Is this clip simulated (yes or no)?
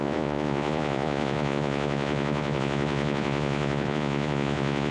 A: yes